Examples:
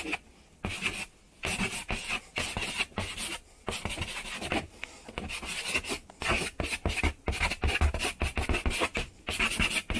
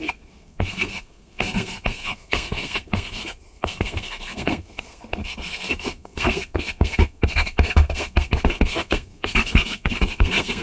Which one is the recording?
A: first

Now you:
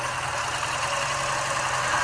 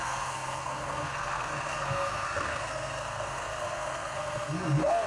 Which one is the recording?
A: first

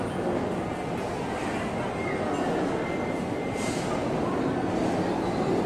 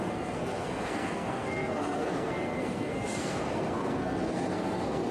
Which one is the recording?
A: first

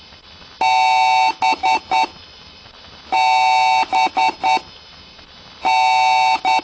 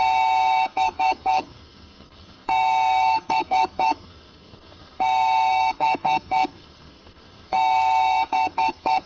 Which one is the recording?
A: first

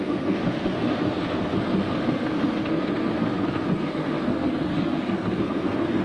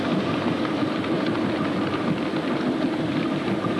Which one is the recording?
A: second